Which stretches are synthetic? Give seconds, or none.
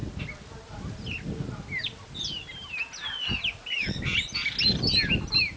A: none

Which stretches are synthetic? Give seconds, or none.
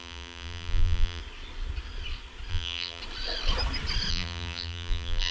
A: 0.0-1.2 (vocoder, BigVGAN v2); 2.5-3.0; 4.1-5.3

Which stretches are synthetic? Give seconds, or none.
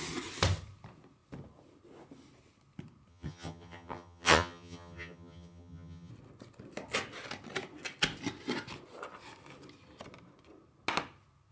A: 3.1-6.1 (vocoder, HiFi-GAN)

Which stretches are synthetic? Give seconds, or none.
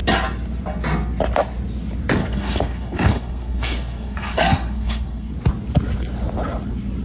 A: 2.2-5.3 (codec, SNAC)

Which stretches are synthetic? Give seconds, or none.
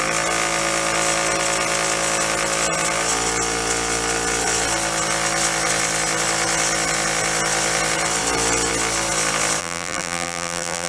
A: 9.6-10.9 (vocoder, BigVGAN v2)